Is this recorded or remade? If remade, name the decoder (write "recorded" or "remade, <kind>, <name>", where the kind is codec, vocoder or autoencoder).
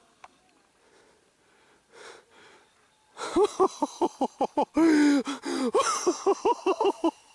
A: recorded